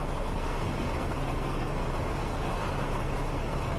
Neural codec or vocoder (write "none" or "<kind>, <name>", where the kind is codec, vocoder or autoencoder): codec, SNAC